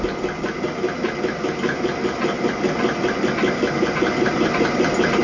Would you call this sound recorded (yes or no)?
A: yes